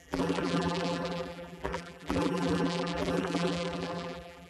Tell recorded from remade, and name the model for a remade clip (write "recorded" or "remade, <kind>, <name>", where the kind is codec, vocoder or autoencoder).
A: remade, vocoder, BigVGAN v2